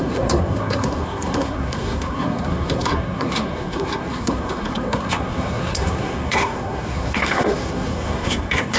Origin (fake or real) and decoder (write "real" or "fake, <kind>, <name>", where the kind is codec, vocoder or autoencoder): fake, codec, SNAC